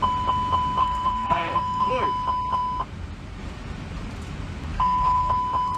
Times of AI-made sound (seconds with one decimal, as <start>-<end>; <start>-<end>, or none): 0.8-1.9; 4.7-5.3